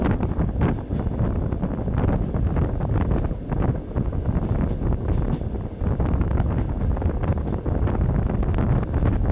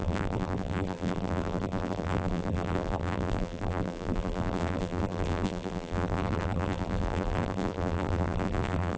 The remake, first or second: second